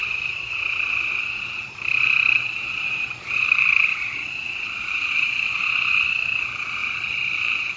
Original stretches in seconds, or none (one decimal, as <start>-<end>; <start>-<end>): 0.9-1.6; 5.6-6.8